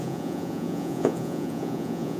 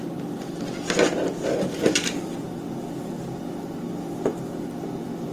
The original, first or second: second